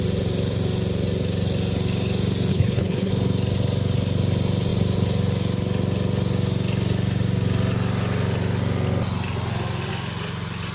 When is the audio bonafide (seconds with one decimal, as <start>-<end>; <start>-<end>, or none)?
0.0-2.5; 3.1-10.7